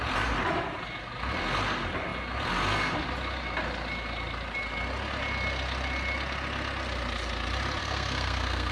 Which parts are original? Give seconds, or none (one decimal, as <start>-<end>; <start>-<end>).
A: 0.0-7.8